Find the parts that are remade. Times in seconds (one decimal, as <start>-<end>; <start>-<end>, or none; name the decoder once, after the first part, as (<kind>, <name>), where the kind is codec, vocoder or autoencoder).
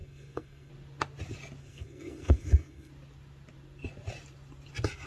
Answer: 0.0-0.7 (codec, SNAC); 1.6-2.9